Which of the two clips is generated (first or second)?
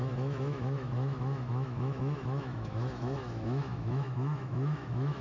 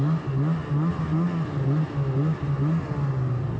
first